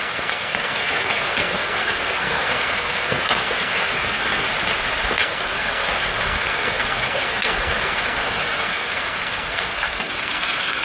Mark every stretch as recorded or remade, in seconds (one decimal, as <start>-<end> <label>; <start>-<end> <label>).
0.0-4.5 remade; 4.5-5.1 recorded; 5.1-10.8 remade